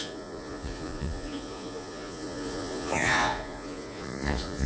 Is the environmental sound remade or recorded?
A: remade